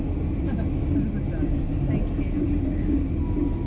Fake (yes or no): no